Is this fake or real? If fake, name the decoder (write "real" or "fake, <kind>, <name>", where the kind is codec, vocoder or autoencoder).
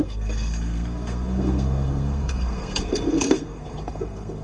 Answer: fake, codec, SNAC